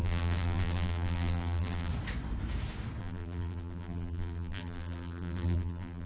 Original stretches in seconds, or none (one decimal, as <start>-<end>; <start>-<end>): 1.9-3.0